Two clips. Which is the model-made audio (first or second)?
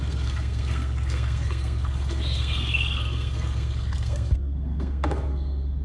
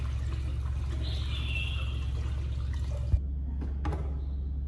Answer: first